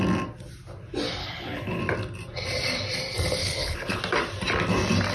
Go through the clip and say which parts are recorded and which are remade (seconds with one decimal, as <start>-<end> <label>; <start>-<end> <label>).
0.0-1.2 recorded; 1.2-1.8 remade; 1.8-3.4 recorded; 3.4-4.0 remade; 4.0-5.1 recorded